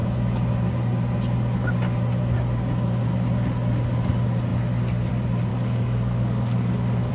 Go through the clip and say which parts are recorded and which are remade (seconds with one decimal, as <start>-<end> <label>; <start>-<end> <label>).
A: 0.0-5.5 recorded; 5.5-7.1 remade